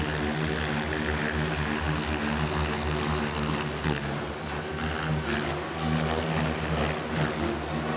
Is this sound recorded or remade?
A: recorded